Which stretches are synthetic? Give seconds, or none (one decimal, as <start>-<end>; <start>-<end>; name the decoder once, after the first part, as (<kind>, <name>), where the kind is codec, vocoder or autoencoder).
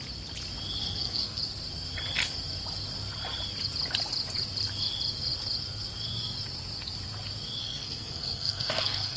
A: 0.8-1.4 (codec, SNAC); 7.6-9.2